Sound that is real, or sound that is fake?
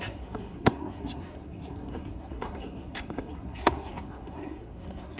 fake